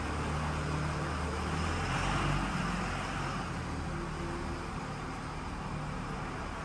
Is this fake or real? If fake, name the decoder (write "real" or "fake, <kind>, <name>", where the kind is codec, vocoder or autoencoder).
real